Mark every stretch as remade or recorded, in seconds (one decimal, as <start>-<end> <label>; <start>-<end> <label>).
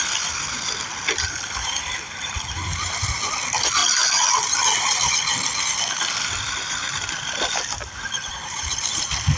0.0-9.4 recorded